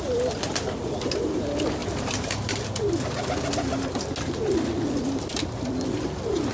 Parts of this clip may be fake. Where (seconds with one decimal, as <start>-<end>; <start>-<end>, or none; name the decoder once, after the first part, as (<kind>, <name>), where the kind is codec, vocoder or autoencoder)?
1.8-2.6 (vocoder, BigVGAN v2)

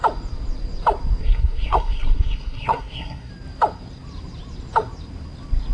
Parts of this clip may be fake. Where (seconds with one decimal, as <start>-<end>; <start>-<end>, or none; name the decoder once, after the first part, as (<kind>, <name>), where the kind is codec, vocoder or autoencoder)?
1.2-3.3 (codec, SNAC)

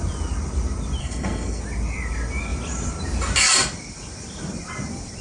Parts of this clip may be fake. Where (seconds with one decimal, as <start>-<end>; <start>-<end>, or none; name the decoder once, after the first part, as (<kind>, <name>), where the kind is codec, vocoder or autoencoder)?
1.0-1.6 (codec, SNAC)

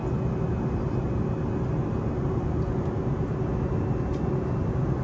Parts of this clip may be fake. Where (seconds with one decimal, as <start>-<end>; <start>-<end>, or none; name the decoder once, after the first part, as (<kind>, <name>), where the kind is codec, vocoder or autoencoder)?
none

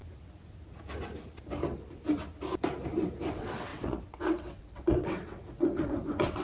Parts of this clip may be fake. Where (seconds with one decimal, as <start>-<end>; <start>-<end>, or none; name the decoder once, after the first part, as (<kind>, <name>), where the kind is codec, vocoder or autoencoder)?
3.3-6.4 (vocoder, WaveNeXt)

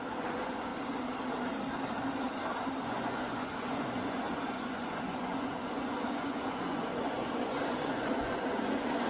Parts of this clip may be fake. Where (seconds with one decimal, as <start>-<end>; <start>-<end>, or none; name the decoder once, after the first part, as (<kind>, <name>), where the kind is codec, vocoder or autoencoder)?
0.0-0.7 (vocoder, Vocos); 2.8-9.1